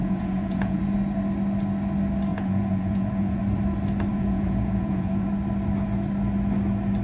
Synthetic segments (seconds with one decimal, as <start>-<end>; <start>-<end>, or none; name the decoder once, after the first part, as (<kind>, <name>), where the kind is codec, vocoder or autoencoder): 0.0-0.8 (vocoder, Vocos); 2.3-3.4; 4.1-5.3